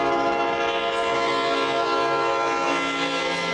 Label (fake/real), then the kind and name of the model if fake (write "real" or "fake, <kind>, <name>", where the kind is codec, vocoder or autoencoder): real